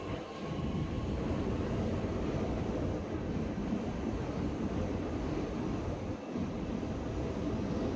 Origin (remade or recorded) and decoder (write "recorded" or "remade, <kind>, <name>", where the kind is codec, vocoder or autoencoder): recorded